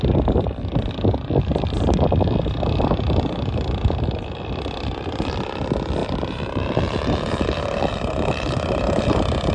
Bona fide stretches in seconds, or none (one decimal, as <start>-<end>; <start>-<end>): 0.0-6.0